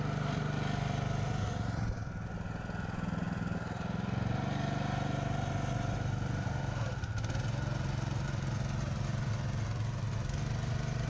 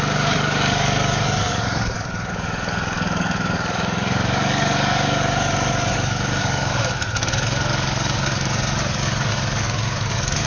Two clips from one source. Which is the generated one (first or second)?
second